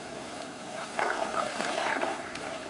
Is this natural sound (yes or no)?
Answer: no